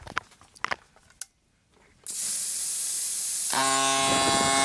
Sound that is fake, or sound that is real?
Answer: real